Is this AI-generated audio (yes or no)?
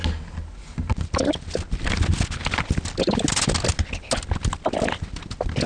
no